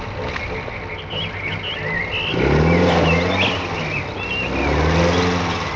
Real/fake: real